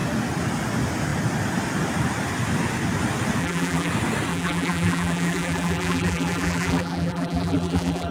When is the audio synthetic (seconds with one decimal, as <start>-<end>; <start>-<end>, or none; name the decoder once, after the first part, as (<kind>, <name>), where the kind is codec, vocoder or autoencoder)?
3.4-3.9 (vocoder, BigVGAN v2); 4.3-8.1